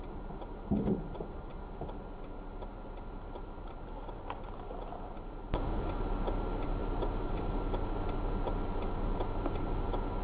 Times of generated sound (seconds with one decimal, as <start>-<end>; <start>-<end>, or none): none